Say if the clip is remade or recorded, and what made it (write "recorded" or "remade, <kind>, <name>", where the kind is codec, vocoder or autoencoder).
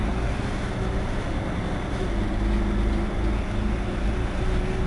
recorded